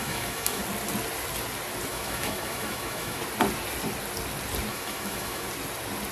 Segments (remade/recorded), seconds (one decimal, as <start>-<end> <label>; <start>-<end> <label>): 0.0-0.6 remade; 0.6-1.9 recorded; 1.9-3.2 remade; 3.2-4.7 recorded; 4.7-5.5 remade; 5.5-6.1 recorded